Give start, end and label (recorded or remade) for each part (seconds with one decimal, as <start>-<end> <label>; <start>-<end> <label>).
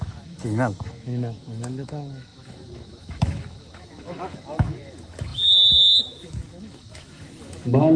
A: 0.0-8.0 remade